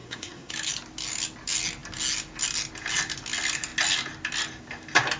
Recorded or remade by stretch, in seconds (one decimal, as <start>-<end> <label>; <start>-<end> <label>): 0.0-0.5 remade; 0.5-5.2 recorded